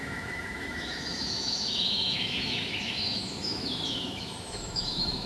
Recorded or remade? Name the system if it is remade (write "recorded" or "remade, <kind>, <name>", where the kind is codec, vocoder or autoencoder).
remade, autoencoder, DAC-VAE